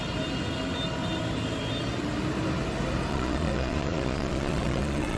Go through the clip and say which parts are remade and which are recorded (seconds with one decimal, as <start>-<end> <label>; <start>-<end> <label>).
0.0-3.1 recorded; 3.1-5.2 remade